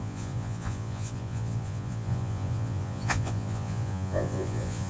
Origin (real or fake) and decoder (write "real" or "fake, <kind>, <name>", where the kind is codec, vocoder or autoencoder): fake, vocoder, Vocos